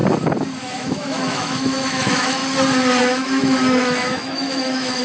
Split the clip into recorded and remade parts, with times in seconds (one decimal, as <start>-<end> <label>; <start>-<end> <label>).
0.0-0.6 recorded; 0.6-2.4 remade; 2.4-3.0 recorded; 3.0-5.0 remade